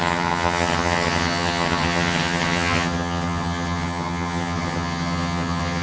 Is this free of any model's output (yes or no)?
no